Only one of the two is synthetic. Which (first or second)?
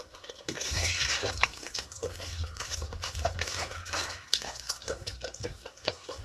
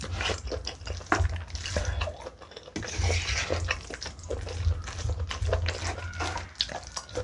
first